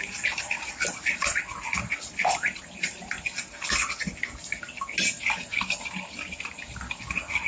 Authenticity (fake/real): real